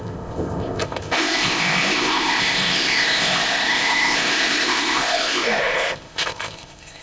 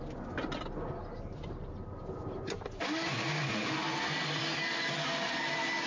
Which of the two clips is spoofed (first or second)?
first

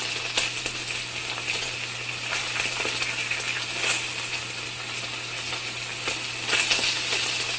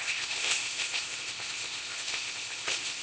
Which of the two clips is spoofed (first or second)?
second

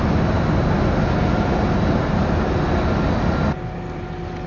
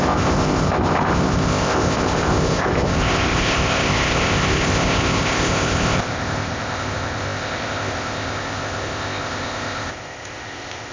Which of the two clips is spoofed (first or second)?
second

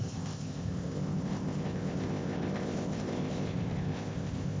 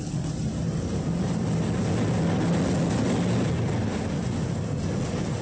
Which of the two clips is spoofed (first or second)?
first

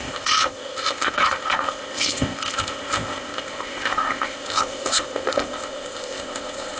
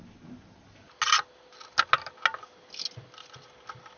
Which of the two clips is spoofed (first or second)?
first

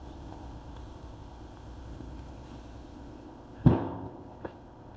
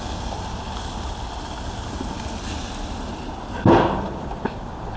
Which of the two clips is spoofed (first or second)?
first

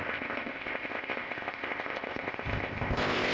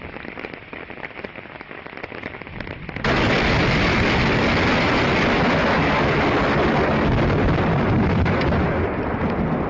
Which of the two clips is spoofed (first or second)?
first